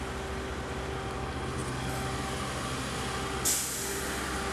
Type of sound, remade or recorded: recorded